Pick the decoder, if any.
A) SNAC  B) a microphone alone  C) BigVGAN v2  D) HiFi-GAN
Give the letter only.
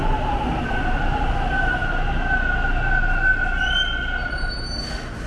B